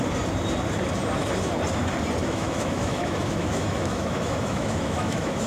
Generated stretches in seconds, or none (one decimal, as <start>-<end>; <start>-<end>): 2.2-5.5